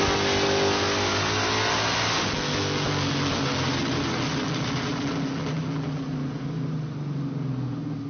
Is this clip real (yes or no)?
yes